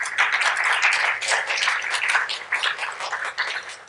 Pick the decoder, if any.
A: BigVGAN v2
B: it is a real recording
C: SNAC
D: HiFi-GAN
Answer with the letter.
B